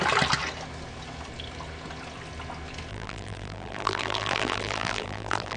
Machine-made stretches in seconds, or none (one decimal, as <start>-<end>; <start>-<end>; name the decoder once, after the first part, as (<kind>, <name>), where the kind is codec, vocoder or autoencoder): 2.9-5.6 (vocoder, BigVGAN v2)